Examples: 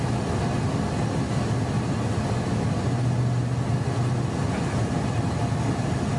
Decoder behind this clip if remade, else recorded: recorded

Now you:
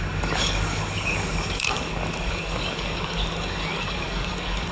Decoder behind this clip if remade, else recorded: remade, codec, DAC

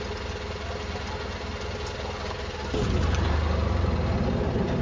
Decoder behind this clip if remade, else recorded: recorded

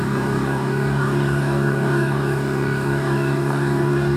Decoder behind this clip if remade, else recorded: remade, codec, DAC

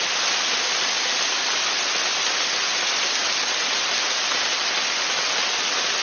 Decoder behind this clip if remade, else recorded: recorded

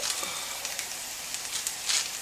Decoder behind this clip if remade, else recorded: recorded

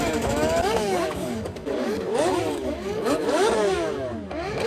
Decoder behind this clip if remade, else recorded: remade, codec, DAC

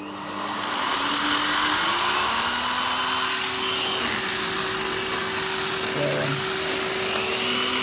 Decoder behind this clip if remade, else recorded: recorded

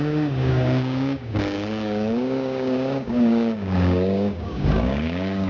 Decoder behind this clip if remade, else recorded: remade, codec, DAC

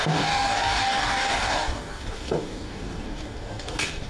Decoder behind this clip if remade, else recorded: remade, codec, DAC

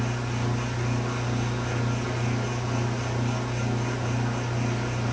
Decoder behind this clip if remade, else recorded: recorded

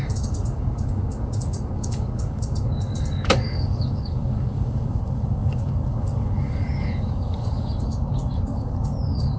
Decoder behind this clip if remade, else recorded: remade, codec, DAC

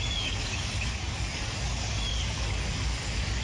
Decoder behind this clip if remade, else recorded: remade, codec, DAC